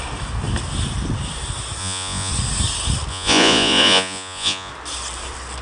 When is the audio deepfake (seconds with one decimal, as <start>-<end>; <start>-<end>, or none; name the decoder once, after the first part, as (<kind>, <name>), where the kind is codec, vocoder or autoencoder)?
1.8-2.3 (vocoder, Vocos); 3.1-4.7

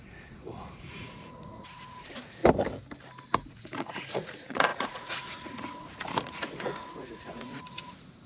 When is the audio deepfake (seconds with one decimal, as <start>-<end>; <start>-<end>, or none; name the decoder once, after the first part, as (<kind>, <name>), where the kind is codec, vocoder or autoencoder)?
0.0-2.4 (vocoder, Vocos); 3.4-8.3

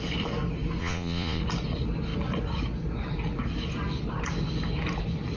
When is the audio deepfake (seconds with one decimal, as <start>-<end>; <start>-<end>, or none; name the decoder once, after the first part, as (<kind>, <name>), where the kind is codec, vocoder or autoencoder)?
0.8-1.4 (vocoder, Vocos)